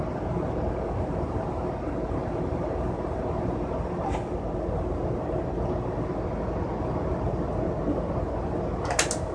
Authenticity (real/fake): real